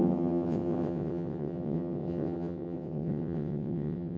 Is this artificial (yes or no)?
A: yes